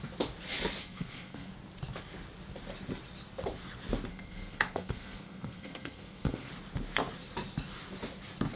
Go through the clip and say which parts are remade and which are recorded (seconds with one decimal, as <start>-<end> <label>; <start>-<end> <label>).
0.0-0.8 recorded; 0.8-1.5 remade; 1.5-4.1 recorded; 4.1-6.5 remade; 6.5-8.6 recorded